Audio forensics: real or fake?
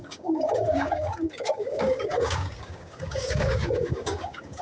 fake